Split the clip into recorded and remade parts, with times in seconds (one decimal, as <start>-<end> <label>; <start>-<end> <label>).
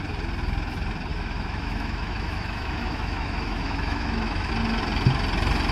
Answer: 0.0-1.1 recorded; 1.1-4.5 remade; 4.5-5.7 recorded